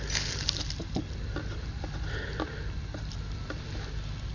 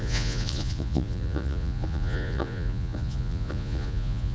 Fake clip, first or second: second